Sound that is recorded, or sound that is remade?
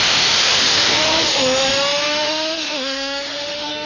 remade